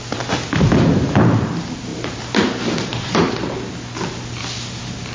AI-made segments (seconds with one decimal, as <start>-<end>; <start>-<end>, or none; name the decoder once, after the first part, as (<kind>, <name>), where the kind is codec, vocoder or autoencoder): none